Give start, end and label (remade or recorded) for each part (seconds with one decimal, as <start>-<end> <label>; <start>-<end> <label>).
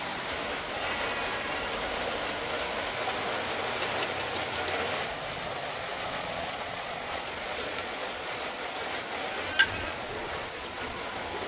0.0-5.9 recorded; 5.9-8.7 remade; 8.7-9.6 recorded; 9.6-11.1 remade; 11.1-11.5 recorded